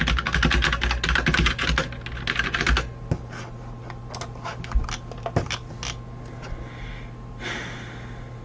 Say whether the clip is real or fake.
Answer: real